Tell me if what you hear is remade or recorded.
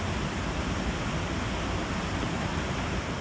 recorded